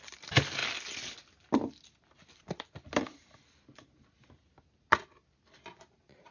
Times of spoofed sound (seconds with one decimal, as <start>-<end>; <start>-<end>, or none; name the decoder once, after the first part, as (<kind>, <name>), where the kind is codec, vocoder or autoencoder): none